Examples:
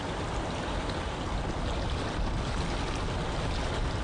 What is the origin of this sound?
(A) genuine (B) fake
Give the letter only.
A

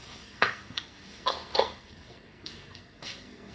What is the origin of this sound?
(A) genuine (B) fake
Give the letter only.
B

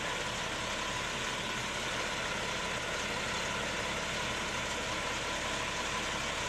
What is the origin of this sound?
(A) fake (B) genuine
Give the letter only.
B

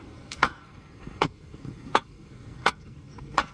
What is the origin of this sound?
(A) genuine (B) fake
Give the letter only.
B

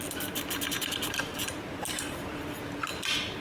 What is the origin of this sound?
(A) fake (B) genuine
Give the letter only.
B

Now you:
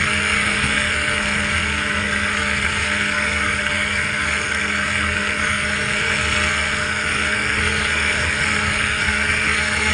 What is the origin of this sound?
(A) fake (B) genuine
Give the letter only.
A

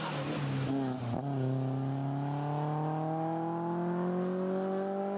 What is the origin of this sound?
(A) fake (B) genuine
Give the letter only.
B